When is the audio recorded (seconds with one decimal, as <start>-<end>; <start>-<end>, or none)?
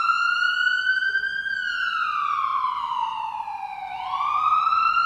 0.0-2.5; 3.3-5.1